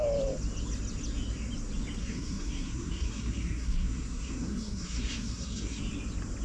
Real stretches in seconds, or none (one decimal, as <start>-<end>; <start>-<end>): 0.0-2.0; 5.8-6.4